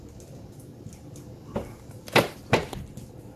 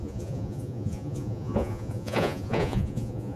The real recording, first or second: first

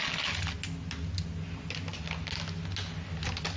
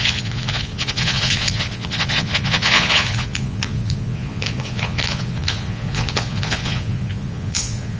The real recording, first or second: first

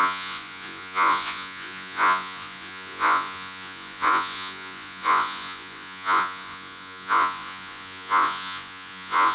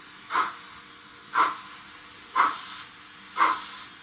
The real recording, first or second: second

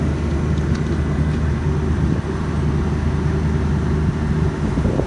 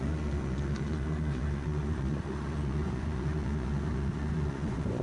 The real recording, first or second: first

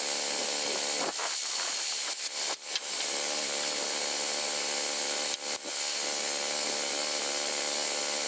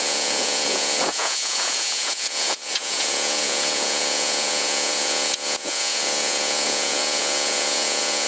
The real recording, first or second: first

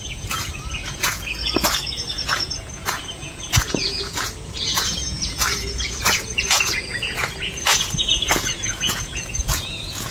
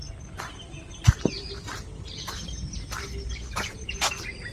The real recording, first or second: second